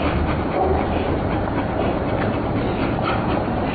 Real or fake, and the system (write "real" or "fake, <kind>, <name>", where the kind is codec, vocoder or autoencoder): fake, vocoder, BigVGAN v2